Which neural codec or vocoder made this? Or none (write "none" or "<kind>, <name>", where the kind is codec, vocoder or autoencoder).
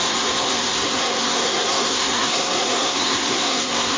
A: codec, SNAC